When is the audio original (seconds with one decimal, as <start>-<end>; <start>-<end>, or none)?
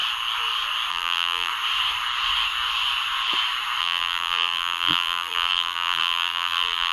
0.0-0.9; 1.5-3.8